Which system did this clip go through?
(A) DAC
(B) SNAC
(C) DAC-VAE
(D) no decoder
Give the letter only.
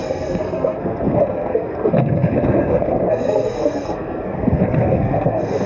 B